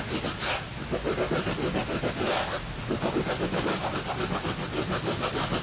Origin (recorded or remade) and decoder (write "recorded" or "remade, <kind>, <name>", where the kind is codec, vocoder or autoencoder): recorded